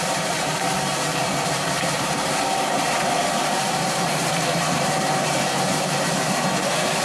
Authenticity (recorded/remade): remade